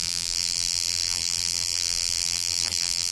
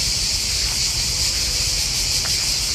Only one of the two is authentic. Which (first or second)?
second